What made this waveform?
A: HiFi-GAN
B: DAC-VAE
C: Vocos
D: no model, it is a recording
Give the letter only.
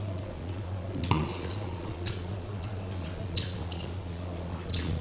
C